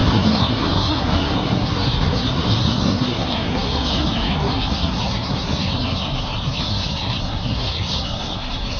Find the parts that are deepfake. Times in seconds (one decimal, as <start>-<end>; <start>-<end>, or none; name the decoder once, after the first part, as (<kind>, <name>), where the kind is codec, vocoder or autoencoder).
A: 0.0-8.8 (codec, SNAC)